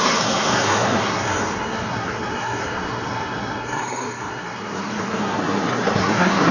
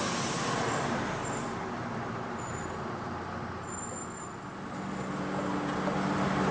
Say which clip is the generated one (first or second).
first